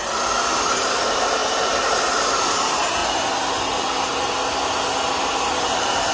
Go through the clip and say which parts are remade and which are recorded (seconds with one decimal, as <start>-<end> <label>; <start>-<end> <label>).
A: 0.0-3.0 remade; 3.0-5.6 recorded; 5.6-6.1 remade